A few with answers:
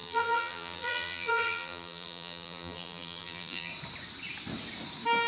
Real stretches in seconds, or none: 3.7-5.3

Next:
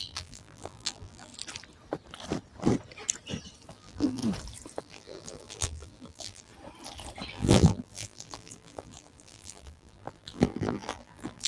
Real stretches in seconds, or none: 1.3-3.7; 4.2-4.8; 6.5-7.3

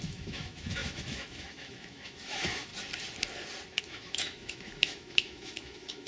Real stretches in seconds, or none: 2.7-3.8